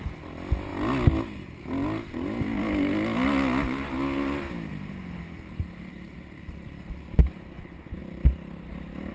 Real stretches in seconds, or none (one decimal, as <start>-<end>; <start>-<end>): 0.0-9.1